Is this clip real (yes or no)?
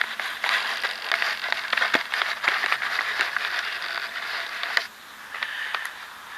yes